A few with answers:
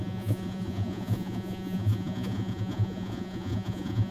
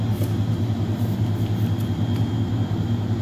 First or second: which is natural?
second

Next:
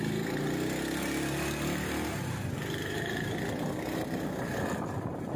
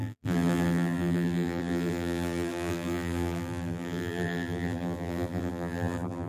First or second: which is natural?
first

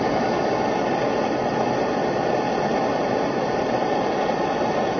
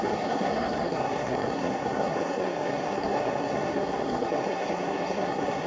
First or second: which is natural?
first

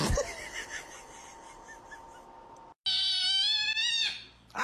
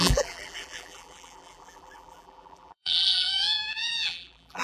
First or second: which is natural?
first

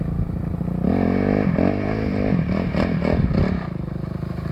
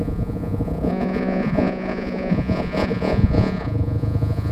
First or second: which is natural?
first